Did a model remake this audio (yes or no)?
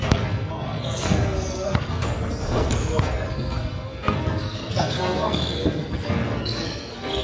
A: yes